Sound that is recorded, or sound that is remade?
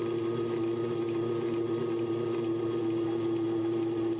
recorded